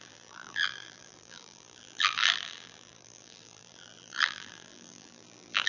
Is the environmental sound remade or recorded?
remade